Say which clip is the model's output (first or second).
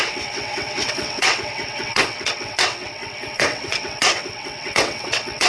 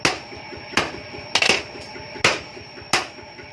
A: first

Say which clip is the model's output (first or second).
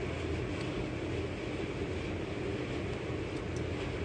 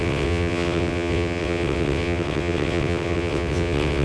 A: second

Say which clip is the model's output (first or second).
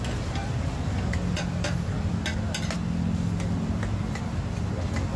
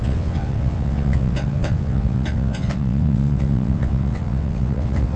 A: second